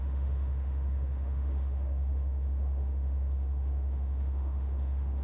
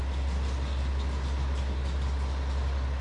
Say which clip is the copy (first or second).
first